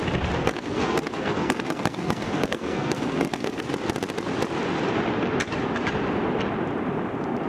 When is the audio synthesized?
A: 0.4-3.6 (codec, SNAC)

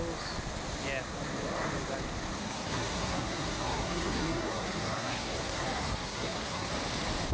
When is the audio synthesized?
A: 2.4-6.7 (codec, SNAC)